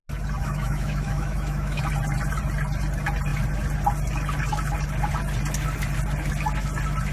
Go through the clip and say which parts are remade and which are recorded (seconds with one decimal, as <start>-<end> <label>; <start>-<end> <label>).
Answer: 0.0-0.4 recorded; 0.4-1.8 remade; 1.8-7.1 recorded